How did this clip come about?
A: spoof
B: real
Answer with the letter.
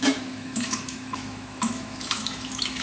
A